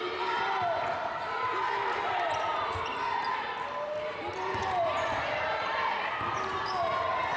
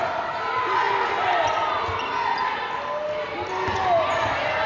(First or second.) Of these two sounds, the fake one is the first